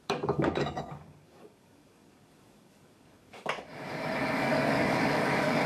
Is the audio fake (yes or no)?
yes